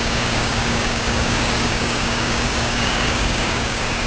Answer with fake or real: fake